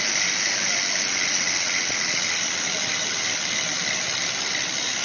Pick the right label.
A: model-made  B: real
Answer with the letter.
B